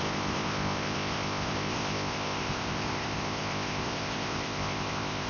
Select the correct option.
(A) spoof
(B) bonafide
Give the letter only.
A